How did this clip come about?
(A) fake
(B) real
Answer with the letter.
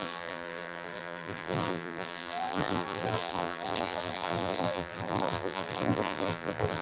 A